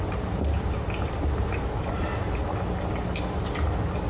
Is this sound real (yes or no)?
yes